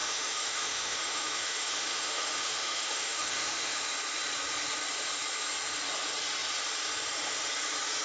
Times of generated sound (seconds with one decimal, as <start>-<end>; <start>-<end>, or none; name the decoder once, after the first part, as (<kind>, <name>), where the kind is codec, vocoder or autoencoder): 0.0-3.8 (autoencoder, DAC-VAE)